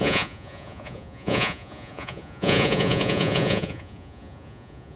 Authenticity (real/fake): fake